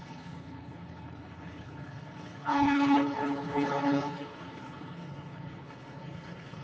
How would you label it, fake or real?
fake